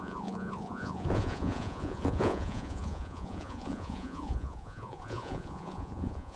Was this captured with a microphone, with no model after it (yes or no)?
no